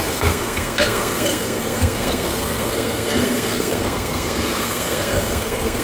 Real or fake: fake